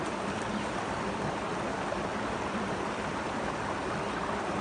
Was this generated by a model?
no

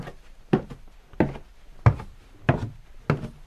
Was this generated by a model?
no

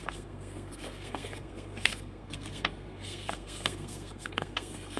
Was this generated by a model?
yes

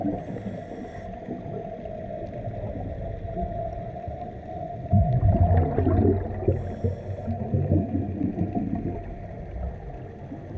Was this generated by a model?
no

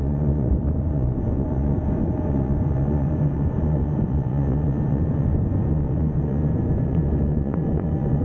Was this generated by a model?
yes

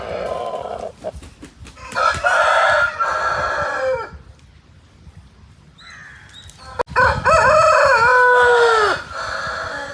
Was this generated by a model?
no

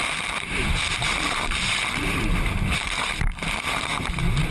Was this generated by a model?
yes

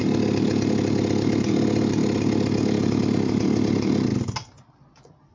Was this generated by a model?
no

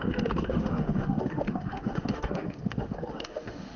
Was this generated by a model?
yes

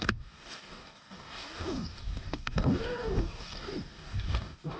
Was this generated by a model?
yes